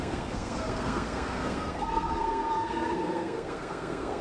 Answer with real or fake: fake